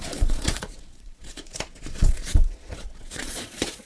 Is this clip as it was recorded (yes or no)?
no